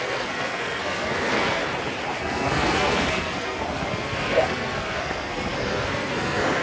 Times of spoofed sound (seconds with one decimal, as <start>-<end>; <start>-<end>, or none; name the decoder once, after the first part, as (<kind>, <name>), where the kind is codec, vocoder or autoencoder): 0.0-1.6 (codec, SNAC); 2.2-6.6